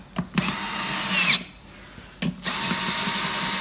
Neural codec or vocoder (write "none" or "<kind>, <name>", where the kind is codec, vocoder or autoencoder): none